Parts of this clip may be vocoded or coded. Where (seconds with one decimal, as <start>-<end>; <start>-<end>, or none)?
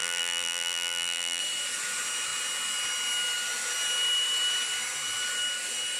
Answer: 0.0-1.4